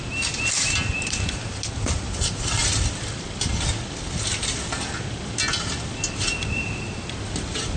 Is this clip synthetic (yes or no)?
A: no